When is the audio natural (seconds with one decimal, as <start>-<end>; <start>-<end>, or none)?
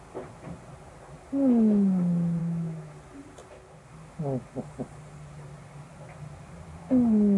0.0-2.4; 2.9-7.4